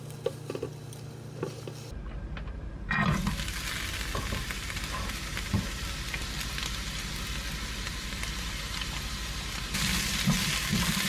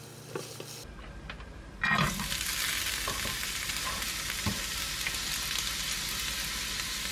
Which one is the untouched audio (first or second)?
second